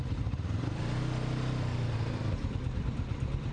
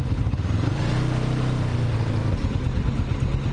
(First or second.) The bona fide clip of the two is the second